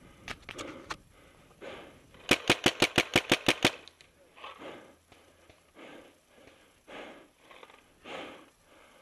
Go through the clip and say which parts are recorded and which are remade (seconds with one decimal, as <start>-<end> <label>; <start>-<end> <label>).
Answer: 0.0-9.0 recorded